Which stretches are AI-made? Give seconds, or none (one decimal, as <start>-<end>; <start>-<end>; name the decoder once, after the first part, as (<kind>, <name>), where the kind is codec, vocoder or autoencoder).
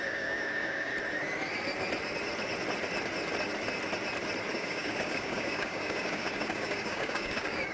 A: 0.0-0.9 (codec, DAC); 4.5-7.7